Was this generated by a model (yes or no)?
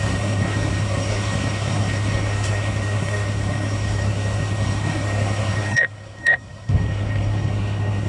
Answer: yes